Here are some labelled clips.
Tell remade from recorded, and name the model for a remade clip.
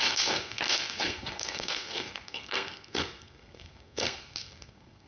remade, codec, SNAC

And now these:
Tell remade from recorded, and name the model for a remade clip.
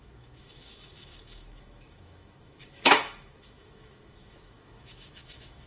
remade, autoencoder, DAC-VAE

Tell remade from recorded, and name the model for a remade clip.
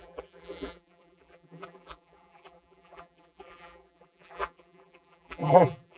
remade, vocoder, BigVGAN v2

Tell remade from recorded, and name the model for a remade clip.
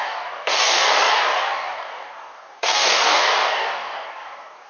remade, codec, DAC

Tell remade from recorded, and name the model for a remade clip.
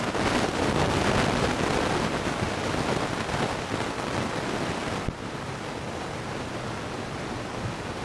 recorded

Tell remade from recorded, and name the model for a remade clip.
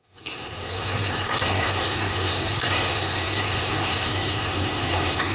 remade, codec, SNAC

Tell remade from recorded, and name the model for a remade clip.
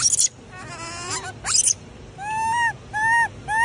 recorded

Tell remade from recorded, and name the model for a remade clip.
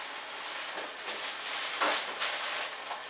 recorded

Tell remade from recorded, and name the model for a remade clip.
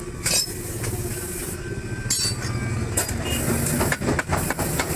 recorded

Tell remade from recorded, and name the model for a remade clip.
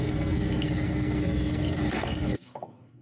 remade, codec, SNAC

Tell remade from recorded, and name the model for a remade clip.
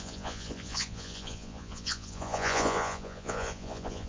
remade, vocoder, Vocos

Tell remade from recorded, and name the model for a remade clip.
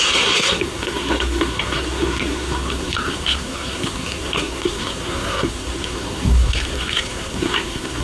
remade, codec, SNAC